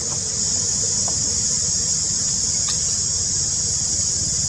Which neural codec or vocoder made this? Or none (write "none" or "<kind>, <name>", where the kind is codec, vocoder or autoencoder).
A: none